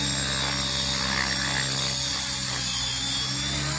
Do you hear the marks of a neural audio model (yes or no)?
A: no